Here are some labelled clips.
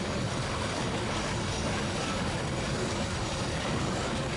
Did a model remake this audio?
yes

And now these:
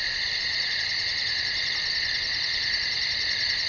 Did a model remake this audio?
no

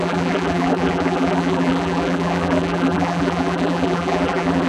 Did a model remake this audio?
yes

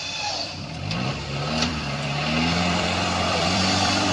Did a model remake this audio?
yes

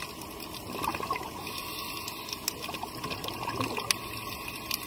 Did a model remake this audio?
no